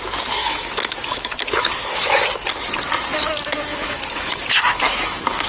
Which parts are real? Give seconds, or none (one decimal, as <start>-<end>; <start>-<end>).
0.0-0.4; 2.2-3.7